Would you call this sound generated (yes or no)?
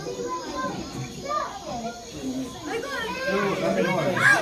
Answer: no